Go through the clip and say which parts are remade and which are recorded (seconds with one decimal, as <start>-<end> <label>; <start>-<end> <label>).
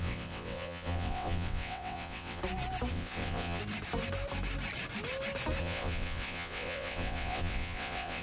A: 0.0-2.4 remade; 2.4-2.9 recorded; 2.9-3.6 remade; 3.6-5.6 recorded; 5.6-8.2 remade